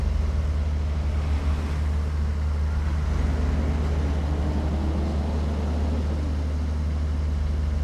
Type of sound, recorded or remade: recorded